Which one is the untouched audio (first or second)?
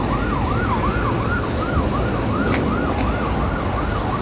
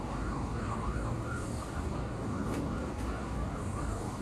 first